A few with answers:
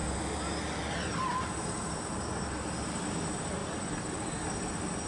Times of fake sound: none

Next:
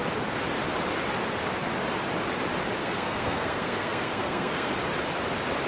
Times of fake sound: 2.8-4.7 (codec, SNAC)

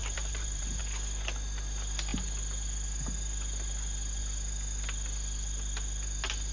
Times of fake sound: 0.0-0.8 (vocoder, BigVGAN v2)

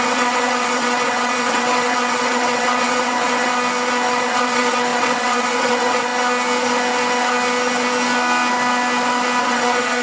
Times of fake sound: 0.0-3.5 (vocoder, WaveNeXt); 4.1-6.1; 9.4-10.0

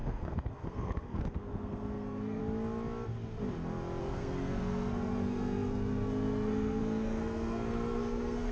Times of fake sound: 0.0-2.4 (codec, SNAC); 4.0-8.5

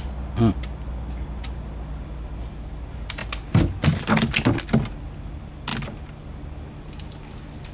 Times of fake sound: none